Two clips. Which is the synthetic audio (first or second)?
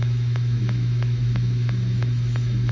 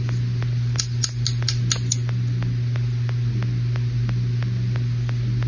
first